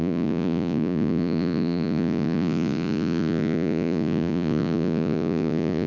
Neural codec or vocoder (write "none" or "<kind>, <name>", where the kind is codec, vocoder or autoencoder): vocoder, Vocos